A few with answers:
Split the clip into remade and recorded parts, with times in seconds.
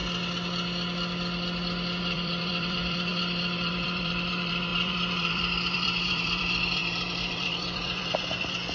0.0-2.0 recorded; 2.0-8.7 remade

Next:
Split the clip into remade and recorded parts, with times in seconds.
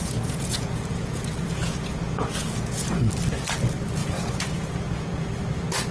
0.0-3.1 remade; 3.1-4.0 recorded; 4.0-5.3 remade; 5.3-5.9 recorded